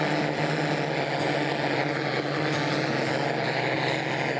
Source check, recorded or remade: recorded